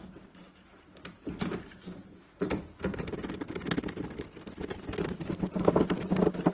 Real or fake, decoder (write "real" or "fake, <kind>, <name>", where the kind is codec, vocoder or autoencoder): real